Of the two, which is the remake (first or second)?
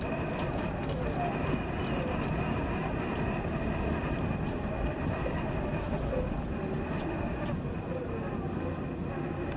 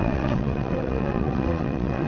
second